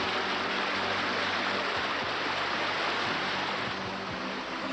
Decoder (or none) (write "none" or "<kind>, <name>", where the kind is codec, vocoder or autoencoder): none